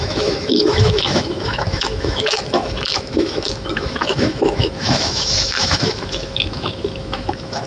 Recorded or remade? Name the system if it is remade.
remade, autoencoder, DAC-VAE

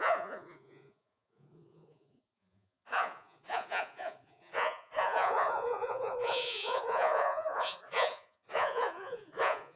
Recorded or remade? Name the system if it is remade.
remade, vocoder, Vocos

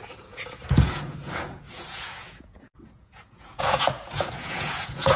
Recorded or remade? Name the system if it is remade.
remade, vocoder, Vocos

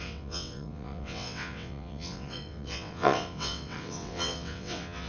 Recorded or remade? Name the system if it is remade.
remade, vocoder, WaveNeXt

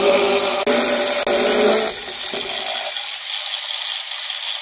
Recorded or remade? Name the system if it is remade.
recorded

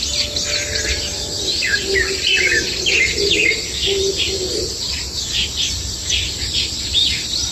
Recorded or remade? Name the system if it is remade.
recorded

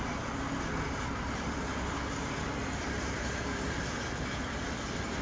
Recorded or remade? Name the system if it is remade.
remade, vocoder, BigVGAN v2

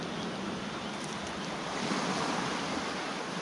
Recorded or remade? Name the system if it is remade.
recorded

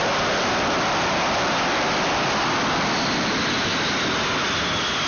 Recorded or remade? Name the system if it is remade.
recorded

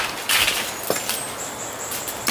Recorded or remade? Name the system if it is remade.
recorded